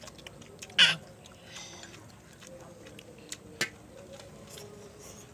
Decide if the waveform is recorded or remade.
recorded